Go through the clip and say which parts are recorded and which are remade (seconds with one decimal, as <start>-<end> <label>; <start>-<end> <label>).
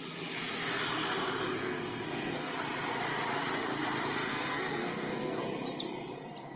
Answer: 0.0-1.6 recorded; 1.6-2.5 remade; 2.5-4.3 recorded; 4.3-5.4 remade; 5.4-6.6 recorded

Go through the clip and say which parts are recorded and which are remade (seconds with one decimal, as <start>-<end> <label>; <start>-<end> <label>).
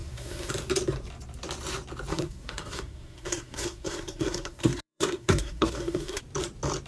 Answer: 0.0-0.5 remade; 0.5-2.1 recorded; 2.1-6.2 remade; 6.2-6.9 recorded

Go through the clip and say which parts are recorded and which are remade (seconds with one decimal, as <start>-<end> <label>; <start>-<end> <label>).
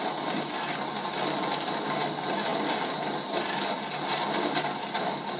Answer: 0.0-5.4 recorded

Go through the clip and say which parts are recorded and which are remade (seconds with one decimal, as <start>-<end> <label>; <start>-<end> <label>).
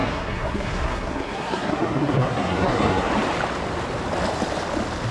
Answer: 0.0-3.1 remade; 3.1-5.1 recorded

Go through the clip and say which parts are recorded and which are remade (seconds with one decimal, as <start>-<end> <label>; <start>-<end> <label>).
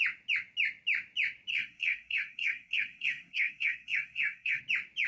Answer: 0.0-1.5 recorded; 1.5-4.6 remade; 4.6-5.1 recorded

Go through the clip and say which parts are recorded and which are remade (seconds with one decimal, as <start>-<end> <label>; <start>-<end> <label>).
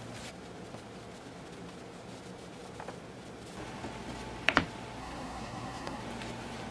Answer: 0.0-5.0 recorded; 5.0-6.0 remade; 6.0-6.7 recorded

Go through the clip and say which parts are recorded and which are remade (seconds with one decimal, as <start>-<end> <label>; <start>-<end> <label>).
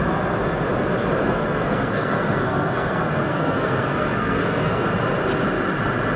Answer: 0.0-1.2 recorded; 1.2-4.9 remade; 4.9-6.2 recorded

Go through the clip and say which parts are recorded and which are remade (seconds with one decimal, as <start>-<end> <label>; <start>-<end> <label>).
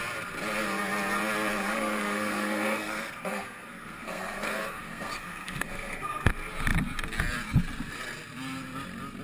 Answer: 0.0-1.6 recorded; 1.6-6.3 remade; 6.3-9.2 recorded